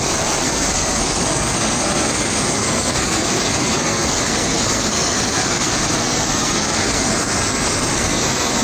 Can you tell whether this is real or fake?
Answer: fake